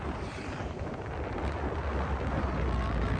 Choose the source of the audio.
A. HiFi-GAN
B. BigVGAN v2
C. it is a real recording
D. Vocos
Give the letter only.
C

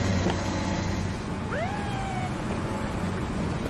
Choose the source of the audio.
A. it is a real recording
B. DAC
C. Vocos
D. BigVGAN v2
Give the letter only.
C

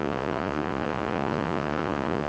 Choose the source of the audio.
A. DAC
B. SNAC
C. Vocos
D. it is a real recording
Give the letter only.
C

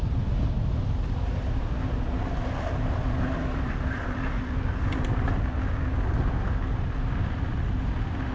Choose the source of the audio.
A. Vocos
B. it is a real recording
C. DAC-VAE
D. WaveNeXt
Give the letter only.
B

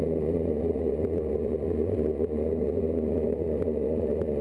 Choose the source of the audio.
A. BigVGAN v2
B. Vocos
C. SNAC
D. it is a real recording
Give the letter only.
B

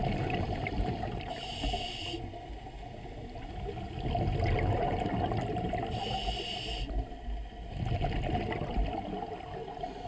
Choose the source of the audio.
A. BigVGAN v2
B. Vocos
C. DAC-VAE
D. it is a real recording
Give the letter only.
D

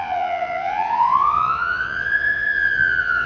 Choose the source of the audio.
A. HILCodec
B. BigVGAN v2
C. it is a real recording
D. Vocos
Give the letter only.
D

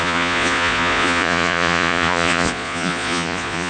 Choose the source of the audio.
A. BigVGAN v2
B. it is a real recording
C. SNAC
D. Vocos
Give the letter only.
D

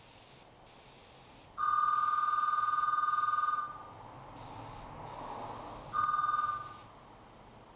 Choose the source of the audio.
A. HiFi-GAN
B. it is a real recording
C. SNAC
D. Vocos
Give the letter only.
B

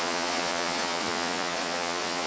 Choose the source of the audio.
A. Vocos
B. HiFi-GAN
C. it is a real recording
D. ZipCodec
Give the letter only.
A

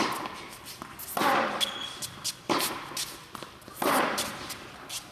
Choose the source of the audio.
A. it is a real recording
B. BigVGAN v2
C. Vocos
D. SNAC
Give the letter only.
A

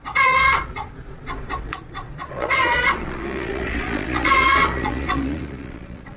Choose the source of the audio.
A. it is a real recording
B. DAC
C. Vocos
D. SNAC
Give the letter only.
C